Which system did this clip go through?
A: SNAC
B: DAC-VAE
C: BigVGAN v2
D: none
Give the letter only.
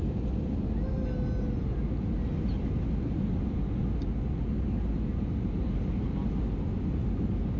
D